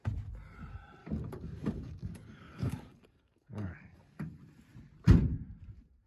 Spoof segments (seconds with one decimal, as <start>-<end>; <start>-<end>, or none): 1.0-4.4